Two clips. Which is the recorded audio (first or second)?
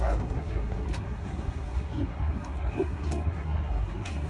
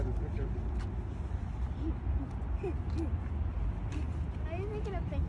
second